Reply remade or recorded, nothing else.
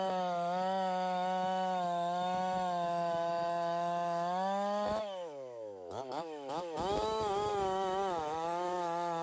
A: remade